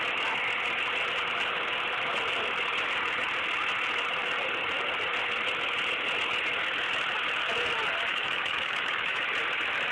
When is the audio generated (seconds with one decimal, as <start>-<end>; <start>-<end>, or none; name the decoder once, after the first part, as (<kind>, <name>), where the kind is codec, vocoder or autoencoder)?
8.1-9.2 (autoencoder, DAC-VAE)